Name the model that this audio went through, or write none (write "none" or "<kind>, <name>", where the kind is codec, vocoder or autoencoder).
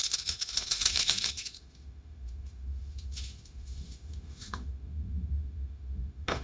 autoencoder, DAC-VAE